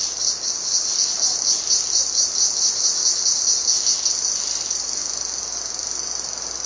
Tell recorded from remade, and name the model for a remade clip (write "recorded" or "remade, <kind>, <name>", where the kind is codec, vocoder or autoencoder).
recorded